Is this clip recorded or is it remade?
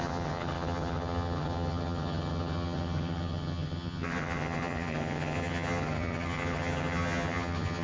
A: remade